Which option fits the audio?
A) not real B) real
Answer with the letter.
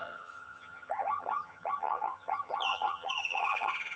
A